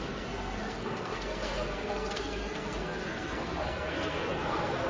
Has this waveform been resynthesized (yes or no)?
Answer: yes